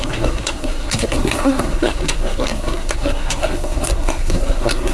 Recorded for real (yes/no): no